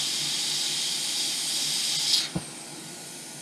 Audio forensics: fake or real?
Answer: real